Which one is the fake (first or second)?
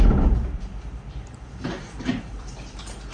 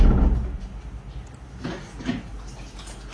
first